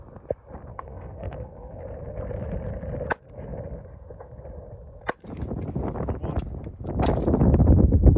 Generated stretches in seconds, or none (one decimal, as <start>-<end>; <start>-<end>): 0.7-1.8